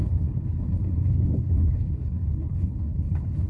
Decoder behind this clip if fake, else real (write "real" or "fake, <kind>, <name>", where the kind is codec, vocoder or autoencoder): fake, codec, HILCodec